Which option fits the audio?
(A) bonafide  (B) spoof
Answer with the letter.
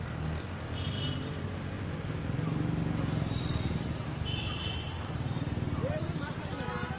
A